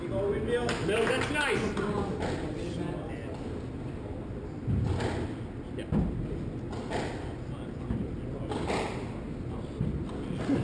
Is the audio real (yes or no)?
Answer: yes